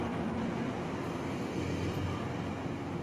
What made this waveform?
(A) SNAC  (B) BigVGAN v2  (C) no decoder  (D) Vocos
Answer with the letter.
C